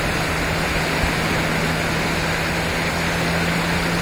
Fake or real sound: real